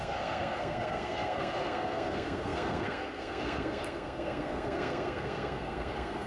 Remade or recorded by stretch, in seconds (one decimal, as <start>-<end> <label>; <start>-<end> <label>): 0.0-6.3 remade